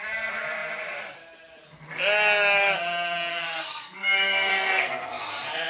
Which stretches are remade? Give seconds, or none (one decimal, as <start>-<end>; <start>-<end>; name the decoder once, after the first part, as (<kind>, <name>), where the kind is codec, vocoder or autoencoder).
3.3-5.3 (codec, SNAC)